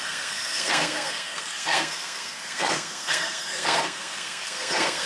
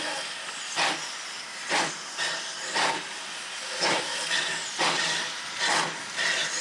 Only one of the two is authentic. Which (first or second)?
second